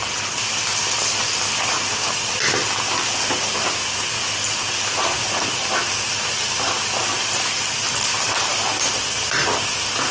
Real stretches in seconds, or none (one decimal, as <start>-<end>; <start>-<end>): 0.0-10.1